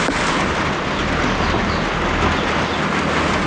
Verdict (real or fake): real